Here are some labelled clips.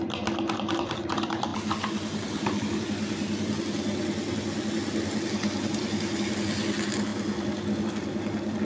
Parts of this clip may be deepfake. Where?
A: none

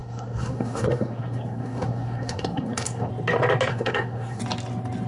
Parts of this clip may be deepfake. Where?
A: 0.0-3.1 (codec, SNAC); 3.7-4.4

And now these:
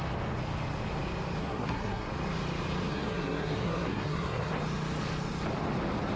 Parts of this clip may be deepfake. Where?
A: 1.4-2.1 (codec, SNAC); 2.9-4.5